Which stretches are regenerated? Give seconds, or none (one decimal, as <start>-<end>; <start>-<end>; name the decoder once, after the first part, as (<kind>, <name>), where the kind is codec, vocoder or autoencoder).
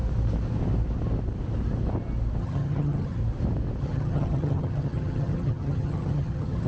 2.4-3.2 (vocoder, HiFi-GAN); 3.8-6.7